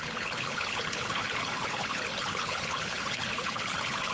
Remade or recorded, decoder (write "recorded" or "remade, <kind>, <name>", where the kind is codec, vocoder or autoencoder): remade, codec, HILCodec